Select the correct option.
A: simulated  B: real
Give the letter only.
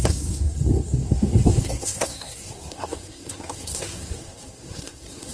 A